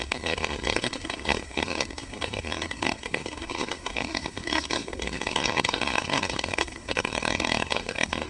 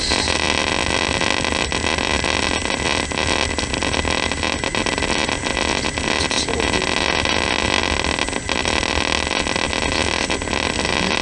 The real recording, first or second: second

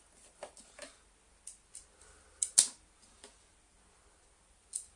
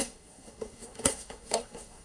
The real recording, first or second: first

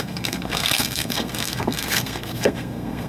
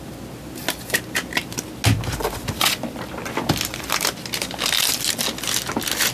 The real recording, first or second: second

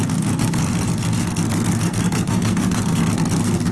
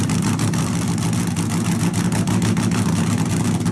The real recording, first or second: second